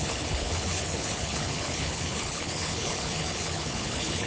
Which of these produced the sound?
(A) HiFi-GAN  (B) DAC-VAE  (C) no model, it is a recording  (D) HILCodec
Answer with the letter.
D